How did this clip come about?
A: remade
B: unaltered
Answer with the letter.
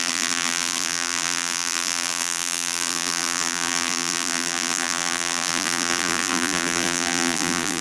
A